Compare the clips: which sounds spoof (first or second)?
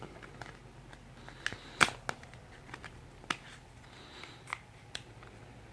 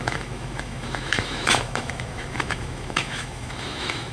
second